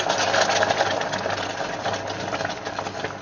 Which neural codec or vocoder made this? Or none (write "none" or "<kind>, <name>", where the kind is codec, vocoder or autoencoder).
none